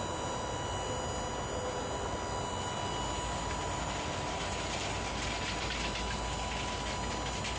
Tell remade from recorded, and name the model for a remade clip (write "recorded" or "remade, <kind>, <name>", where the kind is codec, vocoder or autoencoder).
recorded